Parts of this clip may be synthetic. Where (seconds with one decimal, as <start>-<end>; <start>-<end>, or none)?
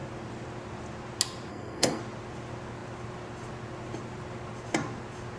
1.5-2.0